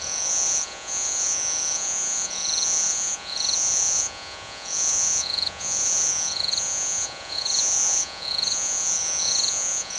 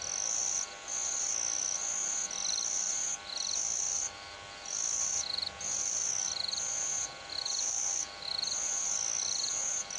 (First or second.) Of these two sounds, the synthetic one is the first